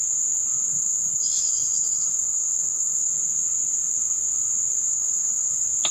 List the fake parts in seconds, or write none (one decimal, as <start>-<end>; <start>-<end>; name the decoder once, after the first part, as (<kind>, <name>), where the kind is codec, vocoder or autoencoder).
0.7-3.1 (autoencoder, DAC-VAE); 4.9-5.5

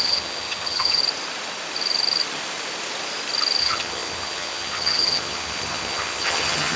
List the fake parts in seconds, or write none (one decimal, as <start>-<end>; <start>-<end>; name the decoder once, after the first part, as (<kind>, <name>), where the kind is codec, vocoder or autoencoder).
0.0-1.0 (vocoder, HiFi-GAN); 3.6-6.8

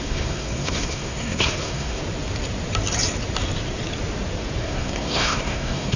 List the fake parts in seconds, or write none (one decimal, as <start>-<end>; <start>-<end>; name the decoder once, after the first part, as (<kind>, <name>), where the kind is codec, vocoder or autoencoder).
0.0-2.0 (codec, SNAC); 4.6-6.0

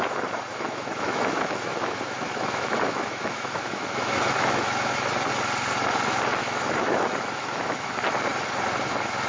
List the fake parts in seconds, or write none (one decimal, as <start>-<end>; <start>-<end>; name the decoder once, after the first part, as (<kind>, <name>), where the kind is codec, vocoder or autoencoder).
0.5-5.1 (autoencoder, DAC-VAE); 6.4-7.9

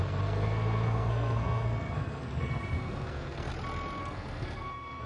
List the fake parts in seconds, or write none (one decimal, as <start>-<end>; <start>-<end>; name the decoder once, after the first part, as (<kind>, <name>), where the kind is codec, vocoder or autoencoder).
0.0-3.5 (codec, SNAC); 4.0-5.1